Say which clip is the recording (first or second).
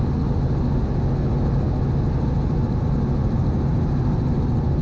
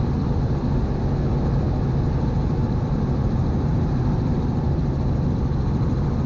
first